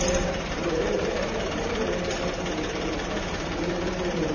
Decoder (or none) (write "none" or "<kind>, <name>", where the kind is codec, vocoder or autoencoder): vocoder, BigVGAN v2